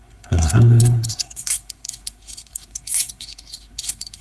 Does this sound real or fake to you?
fake